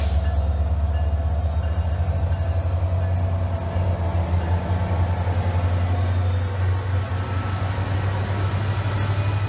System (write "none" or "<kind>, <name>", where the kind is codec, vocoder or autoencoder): none